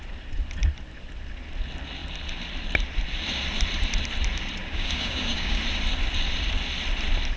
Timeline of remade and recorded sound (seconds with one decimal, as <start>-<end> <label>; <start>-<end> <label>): 0.0-4.6 recorded; 4.6-5.6 remade; 5.6-7.4 recorded